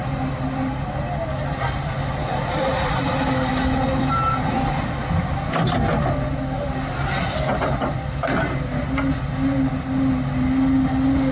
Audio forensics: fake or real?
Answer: real